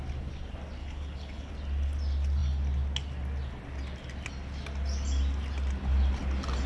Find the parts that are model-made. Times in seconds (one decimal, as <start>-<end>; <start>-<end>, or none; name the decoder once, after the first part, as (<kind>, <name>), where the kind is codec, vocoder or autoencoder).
0.8-1.5 (codec, HILCodec)